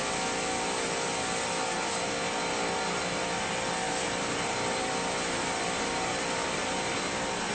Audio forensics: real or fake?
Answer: real